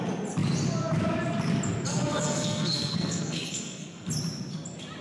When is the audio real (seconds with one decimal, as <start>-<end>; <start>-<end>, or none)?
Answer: 0.0-1.9; 4.1-5.0